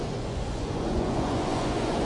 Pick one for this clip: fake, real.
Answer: fake